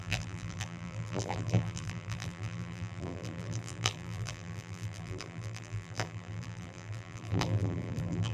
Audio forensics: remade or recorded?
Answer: remade